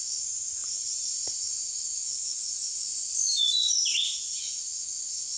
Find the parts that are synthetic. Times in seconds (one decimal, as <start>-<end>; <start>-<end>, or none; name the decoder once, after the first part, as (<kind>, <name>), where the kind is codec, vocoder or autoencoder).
0.0-0.6 (autoencoder, DAC-VAE); 1.4-3.1; 4.4-5.4